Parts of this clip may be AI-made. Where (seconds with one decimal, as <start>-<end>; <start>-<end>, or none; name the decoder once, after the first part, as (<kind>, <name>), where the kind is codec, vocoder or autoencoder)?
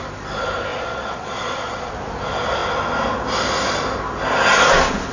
0.7-1.9 (vocoder, Vocos)